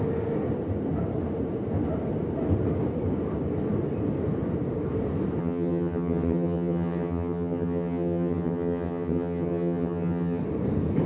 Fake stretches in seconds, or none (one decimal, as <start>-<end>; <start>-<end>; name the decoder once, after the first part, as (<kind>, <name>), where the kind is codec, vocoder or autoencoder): 5.4-10.4 (vocoder, HiFi-GAN)